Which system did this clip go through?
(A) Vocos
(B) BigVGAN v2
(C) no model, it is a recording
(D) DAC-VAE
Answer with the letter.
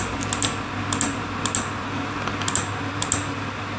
C